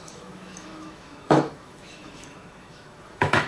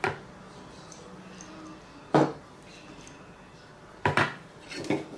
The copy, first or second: first